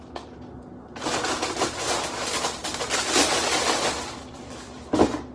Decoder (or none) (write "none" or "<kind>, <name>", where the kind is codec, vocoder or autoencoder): none